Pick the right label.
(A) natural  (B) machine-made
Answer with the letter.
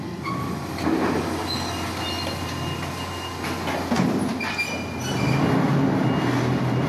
A